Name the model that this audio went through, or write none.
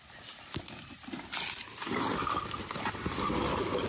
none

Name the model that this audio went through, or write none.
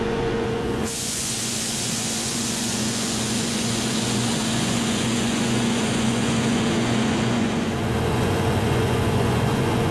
vocoder, Vocos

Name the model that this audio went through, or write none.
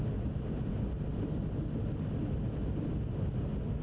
none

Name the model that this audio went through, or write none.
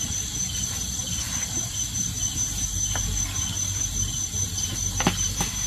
none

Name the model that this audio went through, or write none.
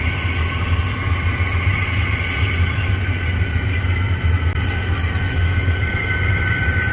none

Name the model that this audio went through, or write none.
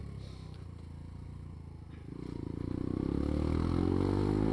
none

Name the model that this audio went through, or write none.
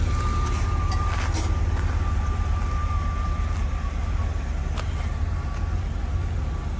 none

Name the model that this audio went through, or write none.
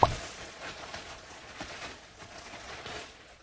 vocoder, Vocos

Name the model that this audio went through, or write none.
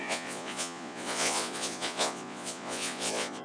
vocoder, Vocos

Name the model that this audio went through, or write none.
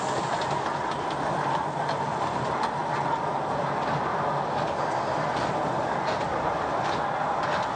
none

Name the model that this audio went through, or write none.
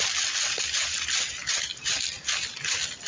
none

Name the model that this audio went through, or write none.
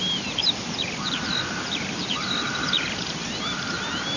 none